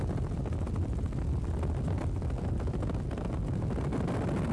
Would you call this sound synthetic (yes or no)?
no